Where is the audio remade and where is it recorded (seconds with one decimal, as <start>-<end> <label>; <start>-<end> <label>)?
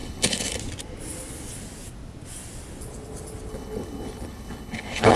0.0-0.6 remade; 0.6-3.5 recorded; 3.5-5.2 remade